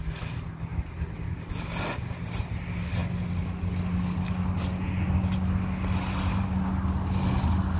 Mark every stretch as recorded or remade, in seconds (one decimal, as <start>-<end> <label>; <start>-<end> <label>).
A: 0.0-7.8 recorded